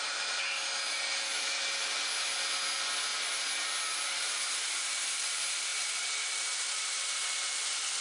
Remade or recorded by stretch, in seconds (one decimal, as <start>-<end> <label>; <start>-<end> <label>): 0.0-8.0 recorded